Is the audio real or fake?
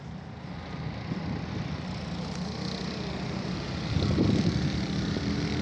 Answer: real